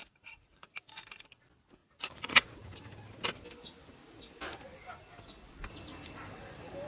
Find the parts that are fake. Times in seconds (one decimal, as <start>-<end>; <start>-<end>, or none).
0.0-0.8; 1.8-3.1